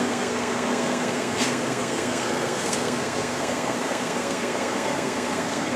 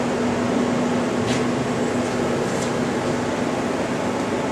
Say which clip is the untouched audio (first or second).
second